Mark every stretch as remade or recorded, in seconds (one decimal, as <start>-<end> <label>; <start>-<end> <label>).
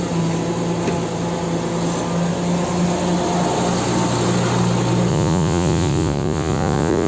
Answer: 0.0-5.1 recorded; 5.1-7.1 remade